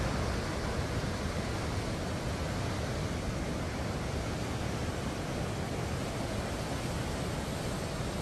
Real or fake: real